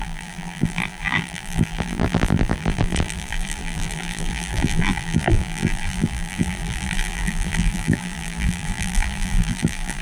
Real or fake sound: fake